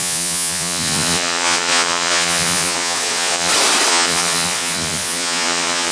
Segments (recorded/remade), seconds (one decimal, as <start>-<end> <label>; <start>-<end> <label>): 0.0-3.5 remade; 3.5-3.9 recorded; 3.9-5.9 remade